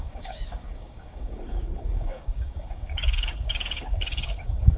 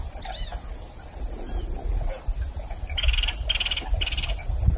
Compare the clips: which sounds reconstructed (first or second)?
first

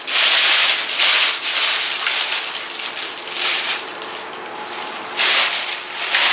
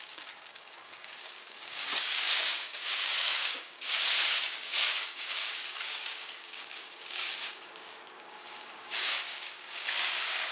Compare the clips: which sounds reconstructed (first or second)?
second